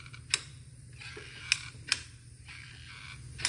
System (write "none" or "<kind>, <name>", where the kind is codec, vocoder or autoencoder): none